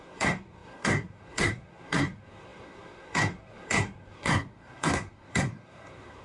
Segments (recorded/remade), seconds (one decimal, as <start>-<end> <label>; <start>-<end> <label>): 0.0-6.2 remade